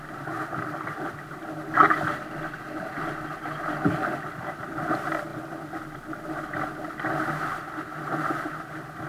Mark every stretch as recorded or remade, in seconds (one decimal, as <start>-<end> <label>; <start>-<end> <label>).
0.0-9.1 recorded